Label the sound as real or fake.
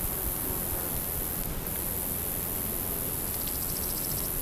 real